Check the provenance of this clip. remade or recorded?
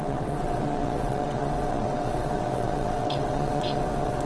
remade